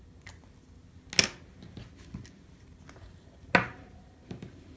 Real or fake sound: real